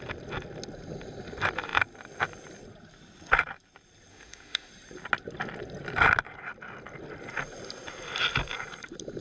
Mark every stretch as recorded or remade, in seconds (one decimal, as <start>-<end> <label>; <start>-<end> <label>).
0.0-4.1 recorded; 4.1-4.7 remade; 4.7-9.2 recorded